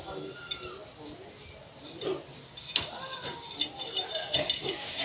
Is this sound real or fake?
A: real